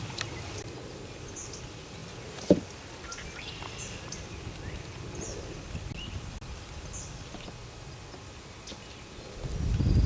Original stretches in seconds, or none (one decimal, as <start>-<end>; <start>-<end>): 0.0-10.1